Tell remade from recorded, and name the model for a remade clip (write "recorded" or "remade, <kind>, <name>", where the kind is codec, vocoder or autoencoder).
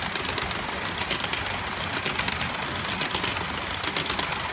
recorded